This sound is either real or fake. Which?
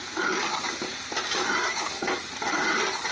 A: fake